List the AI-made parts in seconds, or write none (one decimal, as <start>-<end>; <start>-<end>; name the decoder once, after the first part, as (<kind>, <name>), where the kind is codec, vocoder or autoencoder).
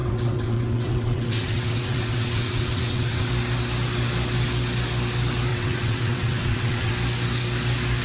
0.0-3.3 (vocoder, WaveNeXt); 5.5-6.9